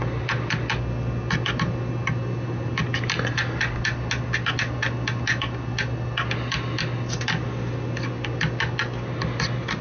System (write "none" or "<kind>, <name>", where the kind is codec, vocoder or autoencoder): none